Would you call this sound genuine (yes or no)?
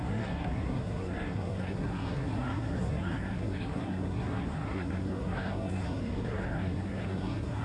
no